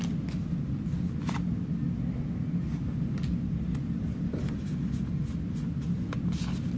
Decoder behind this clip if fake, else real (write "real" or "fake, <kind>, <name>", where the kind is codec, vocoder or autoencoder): real